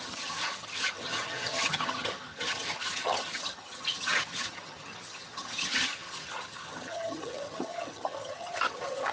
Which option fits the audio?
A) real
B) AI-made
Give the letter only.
B